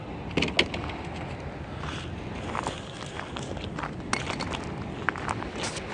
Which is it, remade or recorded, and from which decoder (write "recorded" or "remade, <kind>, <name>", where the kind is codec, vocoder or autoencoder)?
recorded